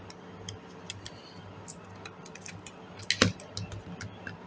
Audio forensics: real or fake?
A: real